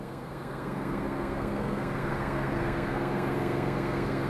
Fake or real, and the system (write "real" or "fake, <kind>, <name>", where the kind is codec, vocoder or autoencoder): fake, codec, SNAC